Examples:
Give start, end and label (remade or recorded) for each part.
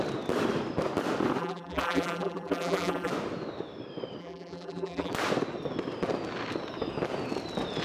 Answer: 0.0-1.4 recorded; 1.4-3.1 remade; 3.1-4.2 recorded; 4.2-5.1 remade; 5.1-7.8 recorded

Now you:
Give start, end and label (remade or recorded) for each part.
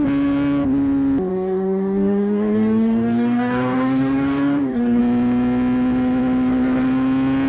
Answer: 0.0-1.3 recorded; 1.3-5.0 remade; 5.0-7.5 recorded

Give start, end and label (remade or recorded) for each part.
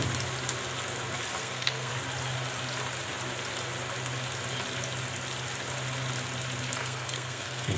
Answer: 0.0-1.4 recorded; 1.4-1.9 remade; 1.9-6.8 recorded; 6.8-7.8 remade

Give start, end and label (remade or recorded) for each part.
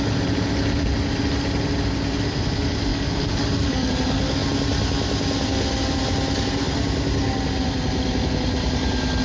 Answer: 0.0-2.9 recorded; 2.9-3.9 remade; 3.9-9.2 recorded